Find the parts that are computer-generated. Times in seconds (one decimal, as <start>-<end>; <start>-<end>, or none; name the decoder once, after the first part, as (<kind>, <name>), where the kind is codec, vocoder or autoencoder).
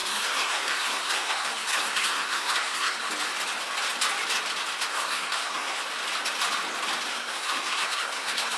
0.0-3.1 (codec, SNAC); 4.9-5.8; 7.1-8.6